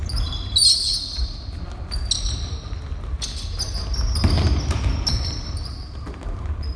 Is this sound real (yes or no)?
yes